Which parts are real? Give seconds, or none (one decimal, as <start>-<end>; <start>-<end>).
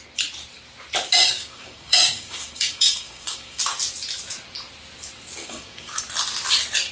0.0-1.2; 3.6-5.4; 6.0-6.9